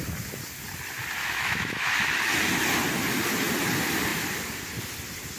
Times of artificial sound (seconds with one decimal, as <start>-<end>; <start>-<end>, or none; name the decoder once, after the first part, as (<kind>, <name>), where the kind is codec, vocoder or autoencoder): 1.2-1.9 (autoencoder, DAC-VAE)